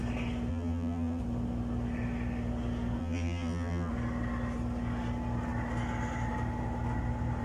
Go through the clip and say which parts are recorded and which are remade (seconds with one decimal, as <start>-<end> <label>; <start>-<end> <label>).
0.0-0.5 recorded; 0.5-1.2 remade; 1.2-3.0 recorded; 3.0-3.9 remade; 3.9-7.4 recorded